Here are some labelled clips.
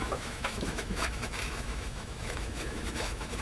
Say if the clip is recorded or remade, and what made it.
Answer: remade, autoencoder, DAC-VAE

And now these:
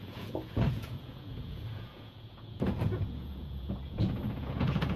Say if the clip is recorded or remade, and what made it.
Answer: remade, vocoder, Vocos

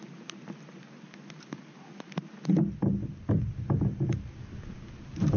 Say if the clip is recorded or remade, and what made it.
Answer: recorded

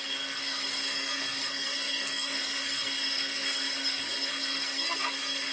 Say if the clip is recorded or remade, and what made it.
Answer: remade, codec, SNAC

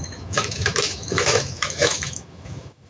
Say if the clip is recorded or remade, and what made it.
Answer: remade, autoencoder, DAC-VAE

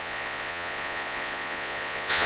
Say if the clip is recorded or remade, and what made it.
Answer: remade, vocoder, Vocos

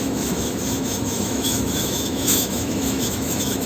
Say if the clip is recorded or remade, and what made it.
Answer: remade, autoencoder, DAC-VAE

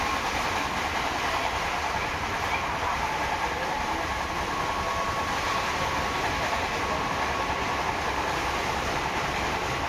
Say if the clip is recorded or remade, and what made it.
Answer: remade, vocoder, BigVGAN v2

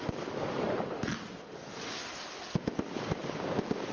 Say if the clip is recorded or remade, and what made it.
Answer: recorded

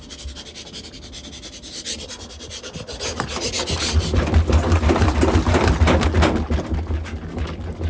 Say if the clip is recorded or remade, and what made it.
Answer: recorded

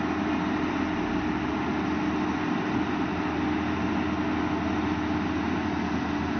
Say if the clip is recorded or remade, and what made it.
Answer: recorded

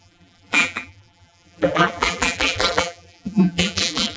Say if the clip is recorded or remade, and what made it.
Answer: remade, vocoder, BigVGAN v2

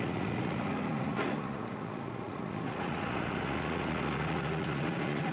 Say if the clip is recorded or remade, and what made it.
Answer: remade, vocoder, Vocos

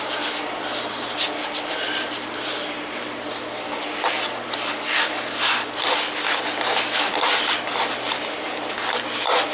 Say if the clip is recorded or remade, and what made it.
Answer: recorded